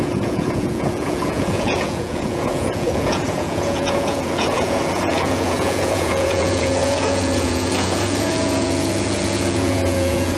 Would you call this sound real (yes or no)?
no